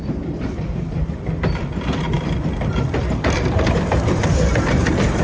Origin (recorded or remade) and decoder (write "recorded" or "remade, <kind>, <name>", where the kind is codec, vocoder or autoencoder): remade, vocoder, BigVGAN v2